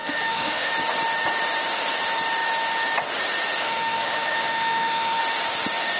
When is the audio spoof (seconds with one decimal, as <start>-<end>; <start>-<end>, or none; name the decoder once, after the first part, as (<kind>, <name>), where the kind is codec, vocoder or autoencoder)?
0.0-0.7 (autoencoder, DAC-VAE); 3.6-5.2